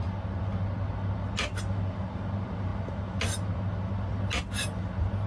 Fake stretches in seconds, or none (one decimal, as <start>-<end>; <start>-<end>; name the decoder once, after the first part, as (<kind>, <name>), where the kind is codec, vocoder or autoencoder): none